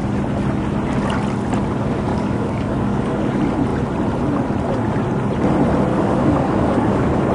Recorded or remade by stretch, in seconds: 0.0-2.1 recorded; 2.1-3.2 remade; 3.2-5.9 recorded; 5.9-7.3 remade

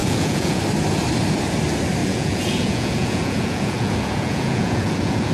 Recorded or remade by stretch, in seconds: 0.0-0.6 remade; 0.6-2.0 recorded; 2.0-5.3 remade

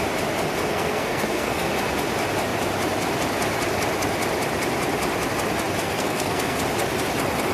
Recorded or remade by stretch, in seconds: 0.0-0.7 recorded; 0.7-1.7 remade; 1.7-5.8 recorded; 5.8-6.6 remade; 6.6-7.5 recorded

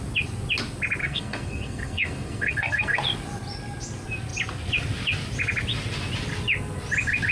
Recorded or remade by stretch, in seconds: 0.0-1.0 recorded; 1.0-3.0 remade; 3.0-7.3 recorded

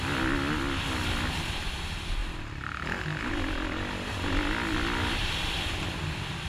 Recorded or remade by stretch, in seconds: 0.0-6.5 recorded

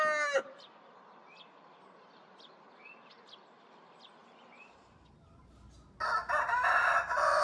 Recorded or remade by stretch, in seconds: 0.0-7.4 recorded

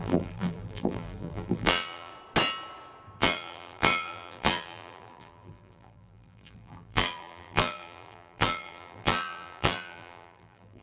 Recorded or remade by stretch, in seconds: 0.0-2.1 remade; 2.1-3.2 recorded; 3.2-10.8 remade

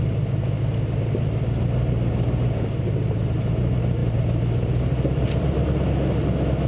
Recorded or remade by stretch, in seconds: 0.0-4.0 recorded; 4.0-4.8 remade; 4.8-6.7 recorded